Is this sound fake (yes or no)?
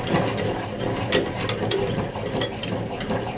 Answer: no